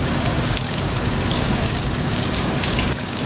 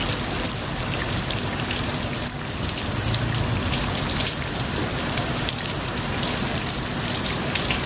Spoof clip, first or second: first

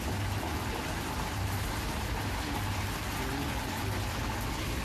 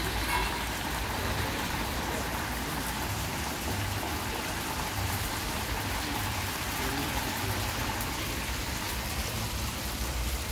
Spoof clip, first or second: second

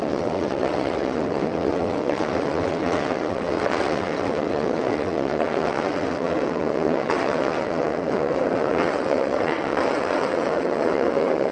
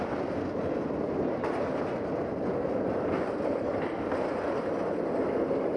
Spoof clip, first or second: first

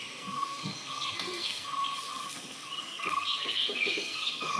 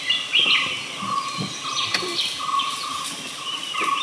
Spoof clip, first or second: first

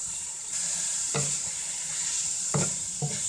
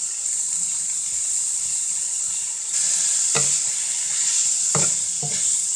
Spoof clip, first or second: first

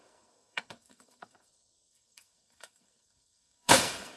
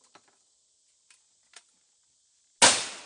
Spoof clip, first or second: first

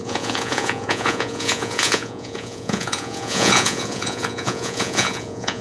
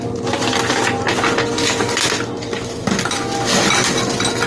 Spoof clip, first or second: first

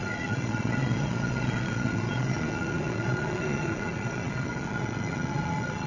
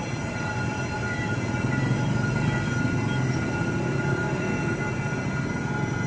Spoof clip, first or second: first